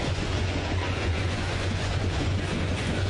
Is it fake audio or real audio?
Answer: fake